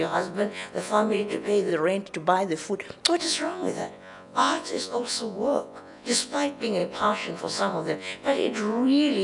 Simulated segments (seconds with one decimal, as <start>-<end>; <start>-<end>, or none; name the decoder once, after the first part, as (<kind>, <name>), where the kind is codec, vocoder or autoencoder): 0.0-1.7 (vocoder, Vocos); 3.2-9.2